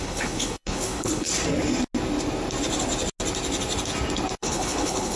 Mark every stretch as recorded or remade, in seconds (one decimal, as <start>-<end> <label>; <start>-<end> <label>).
0.0-1.3 remade; 1.3-4.4 recorded; 4.4-5.2 remade